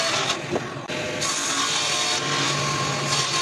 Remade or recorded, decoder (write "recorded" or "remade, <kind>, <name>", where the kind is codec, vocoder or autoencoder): recorded